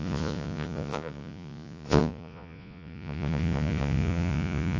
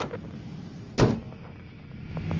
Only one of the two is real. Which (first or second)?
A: second